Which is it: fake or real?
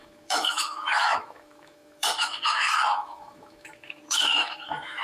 fake